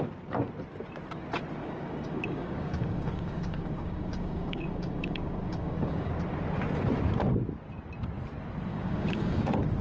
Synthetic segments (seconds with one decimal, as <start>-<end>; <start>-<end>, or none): 1.6-6.1; 8.7-9.4